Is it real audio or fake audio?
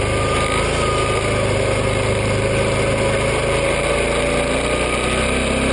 real